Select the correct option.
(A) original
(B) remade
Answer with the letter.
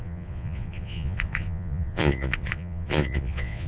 B